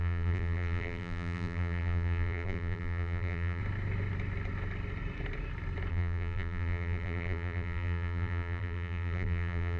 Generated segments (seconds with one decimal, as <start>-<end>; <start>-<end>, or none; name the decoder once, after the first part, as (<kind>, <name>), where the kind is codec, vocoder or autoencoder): 0.0-3.6 (vocoder, BigVGAN v2); 5.9-9.8